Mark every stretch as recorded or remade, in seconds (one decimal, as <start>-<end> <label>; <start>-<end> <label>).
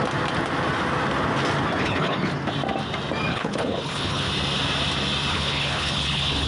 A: 0.0-1.8 recorded; 1.8-2.3 remade; 2.3-3.3 recorded; 3.3-4.3 remade; 4.3-5.3 recorded; 5.3-6.5 remade